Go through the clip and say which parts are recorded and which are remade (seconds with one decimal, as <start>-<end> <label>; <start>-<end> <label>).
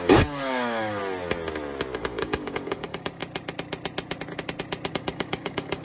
0.0-1.0 remade; 1.0-2.0 recorded; 2.0-3.2 remade; 3.2-4.9 recorded; 4.9-5.8 remade